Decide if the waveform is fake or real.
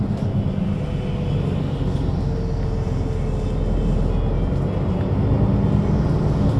real